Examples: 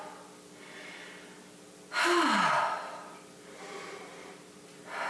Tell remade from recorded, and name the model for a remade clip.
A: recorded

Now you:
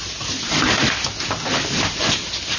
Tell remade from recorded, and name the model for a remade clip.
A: recorded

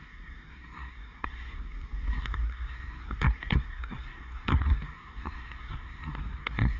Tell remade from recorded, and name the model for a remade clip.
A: remade, codec, SNAC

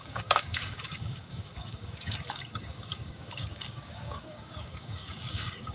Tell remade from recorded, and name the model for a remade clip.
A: remade, codec, DAC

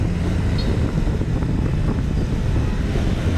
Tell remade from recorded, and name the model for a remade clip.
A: recorded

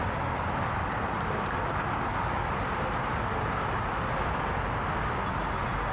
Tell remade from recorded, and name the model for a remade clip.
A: recorded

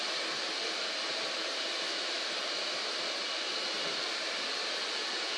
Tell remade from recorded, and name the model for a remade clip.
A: recorded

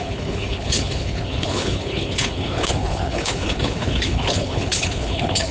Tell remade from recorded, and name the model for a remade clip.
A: remade, codec, HILCodec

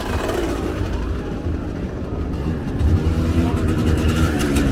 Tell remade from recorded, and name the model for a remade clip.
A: remade, vocoder, BigVGAN v2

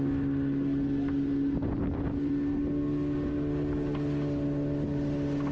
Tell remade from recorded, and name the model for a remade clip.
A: recorded